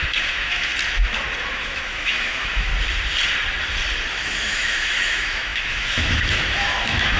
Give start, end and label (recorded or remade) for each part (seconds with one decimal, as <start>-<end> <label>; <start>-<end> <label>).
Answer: 0.0-0.7 remade; 0.7-1.5 recorded; 1.5-2.7 remade; 2.7-4.1 recorded; 4.1-7.2 remade